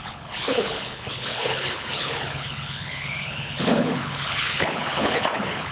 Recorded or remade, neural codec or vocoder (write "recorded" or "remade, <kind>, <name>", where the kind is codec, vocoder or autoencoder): remade, codec, HILCodec